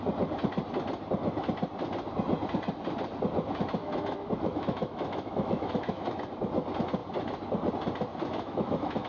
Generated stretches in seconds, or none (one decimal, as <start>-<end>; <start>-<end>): 3.8-6.2; 8.1-9.1